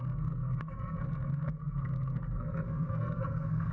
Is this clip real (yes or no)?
no